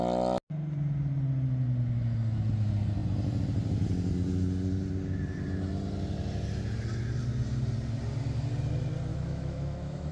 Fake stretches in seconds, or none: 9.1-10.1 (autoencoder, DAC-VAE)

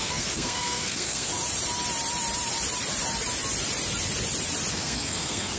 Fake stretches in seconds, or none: 0.0-1.3 (codec, SNAC); 4.7-5.6

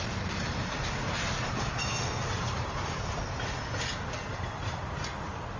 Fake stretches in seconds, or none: 0.4-3.2 (vocoder, BigVGAN v2); 4.3-4.8